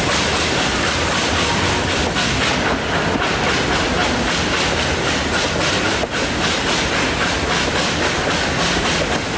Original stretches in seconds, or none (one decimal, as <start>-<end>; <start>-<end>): 0.0-9.4

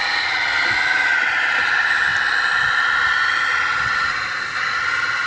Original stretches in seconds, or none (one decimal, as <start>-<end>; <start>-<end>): 0.0-5.3

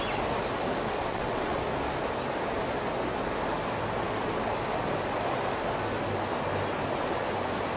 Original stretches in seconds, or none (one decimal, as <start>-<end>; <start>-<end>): 0.0-1.0; 1.6-7.8

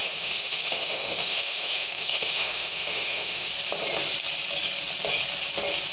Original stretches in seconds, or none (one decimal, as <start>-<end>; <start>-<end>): 3.5-5.9

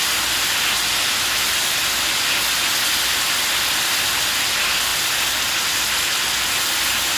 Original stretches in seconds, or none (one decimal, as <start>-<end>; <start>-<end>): 0.0-7.2

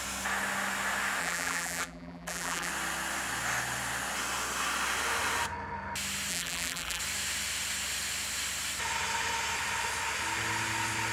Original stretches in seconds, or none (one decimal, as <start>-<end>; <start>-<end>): 0.0-1.2; 2.7-6.3; 7.0-11.1